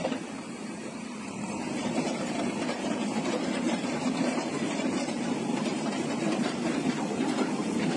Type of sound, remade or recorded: remade